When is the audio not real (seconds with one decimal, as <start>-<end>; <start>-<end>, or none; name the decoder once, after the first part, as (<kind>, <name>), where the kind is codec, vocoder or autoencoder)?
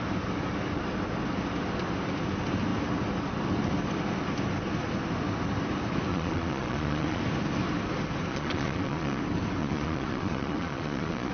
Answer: 6.1-7.2 (vocoder, Vocos); 8.3-9.2; 9.6-11.3